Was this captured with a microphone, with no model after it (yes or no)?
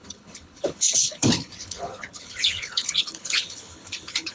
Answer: no